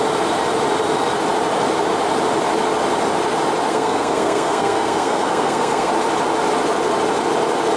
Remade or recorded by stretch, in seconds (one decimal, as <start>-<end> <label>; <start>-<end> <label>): 0.0-3.7 recorded; 3.7-5.9 remade; 5.9-7.8 recorded